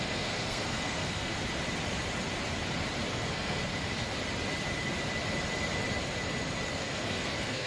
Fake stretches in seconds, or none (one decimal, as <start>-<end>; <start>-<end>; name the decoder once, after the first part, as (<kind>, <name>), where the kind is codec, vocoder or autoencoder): 0.0-1.3 (codec, SNAC); 3.1-3.6; 6.7-7.7